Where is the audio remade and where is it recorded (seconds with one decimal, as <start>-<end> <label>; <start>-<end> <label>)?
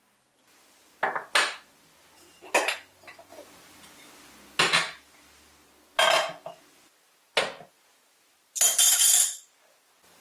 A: 0.0-10.2 recorded